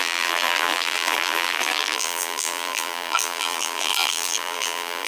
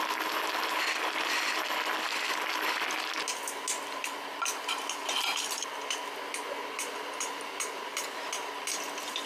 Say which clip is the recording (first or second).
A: second